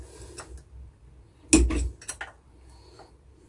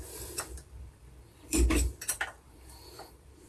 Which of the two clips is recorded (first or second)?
first